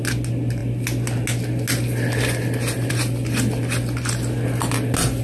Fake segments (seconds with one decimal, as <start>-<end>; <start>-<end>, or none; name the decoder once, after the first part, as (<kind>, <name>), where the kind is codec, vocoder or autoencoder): none